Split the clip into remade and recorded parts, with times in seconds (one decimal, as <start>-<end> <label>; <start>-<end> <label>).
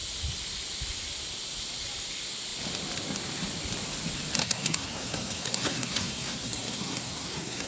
0.0-4.4 recorded; 4.4-7.7 remade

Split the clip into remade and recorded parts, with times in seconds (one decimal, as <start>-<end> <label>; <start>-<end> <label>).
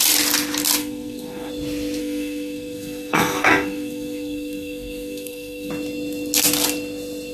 0.0-0.8 recorded; 0.8-1.5 remade; 1.5-2.0 recorded; 2.0-5.7 remade; 5.7-7.3 recorded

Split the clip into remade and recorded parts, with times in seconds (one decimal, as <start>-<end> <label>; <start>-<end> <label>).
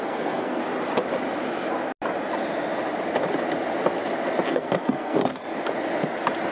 0.0-0.6 remade; 0.6-4.5 recorded; 4.5-5.3 remade; 5.3-6.5 recorded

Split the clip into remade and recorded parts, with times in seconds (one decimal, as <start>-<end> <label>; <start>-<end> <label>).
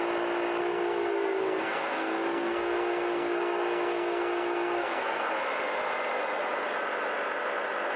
0.0-0.6 recorded; 0.6-5.3 remade; 5.3-8.0 recorded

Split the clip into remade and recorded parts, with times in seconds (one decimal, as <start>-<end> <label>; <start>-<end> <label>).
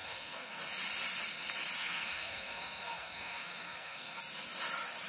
0.0-0.6 remade; 0.6-1.8 recorded; 1.8-4.2 remade; 4.2-5.1 recorded